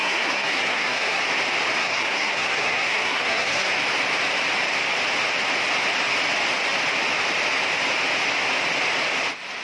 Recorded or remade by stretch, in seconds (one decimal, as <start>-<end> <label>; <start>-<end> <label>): 0.0-1.2 remade; 1.2-1.8 recorded; 1.8-3.7 remade; 3.7-9.6 recorded